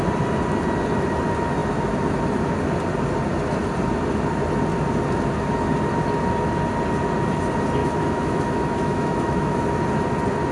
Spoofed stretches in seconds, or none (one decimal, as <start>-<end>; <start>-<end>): 7.8-9.6